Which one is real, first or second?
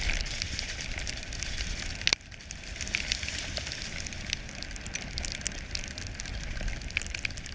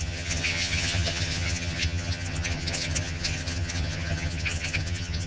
first